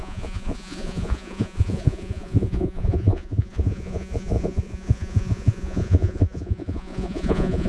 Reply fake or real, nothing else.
fake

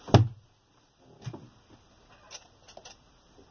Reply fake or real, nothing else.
real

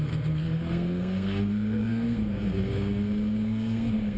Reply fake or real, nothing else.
fake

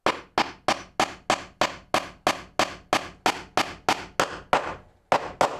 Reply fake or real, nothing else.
real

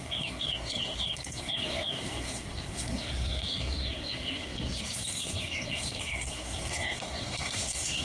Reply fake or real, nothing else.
fake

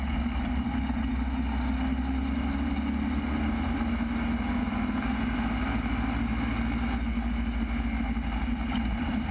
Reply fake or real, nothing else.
real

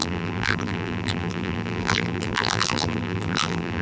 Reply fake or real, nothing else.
fake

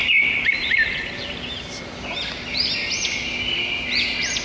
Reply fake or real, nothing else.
real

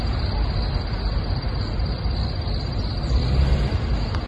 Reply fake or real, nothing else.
real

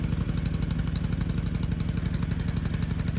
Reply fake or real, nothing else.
real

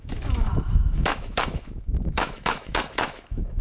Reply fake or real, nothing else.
fake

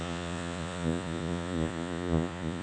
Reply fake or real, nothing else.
fake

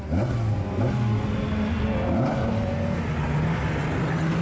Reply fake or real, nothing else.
real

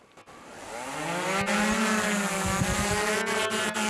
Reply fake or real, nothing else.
real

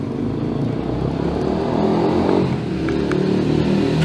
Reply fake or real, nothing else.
real